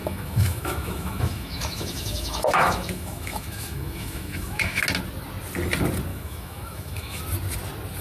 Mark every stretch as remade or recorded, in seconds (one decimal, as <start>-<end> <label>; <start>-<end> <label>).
0.0-4.8 remade; 4.8-6.1 recorded; 6.1-7.2 remade; 7.2-8.0 recorded